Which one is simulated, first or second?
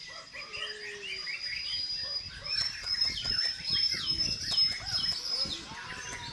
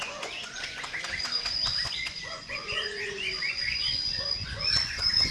second